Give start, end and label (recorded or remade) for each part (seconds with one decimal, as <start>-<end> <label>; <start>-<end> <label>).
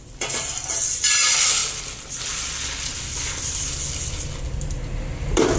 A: 0.0-5.6 recorded